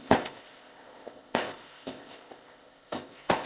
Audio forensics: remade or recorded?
remade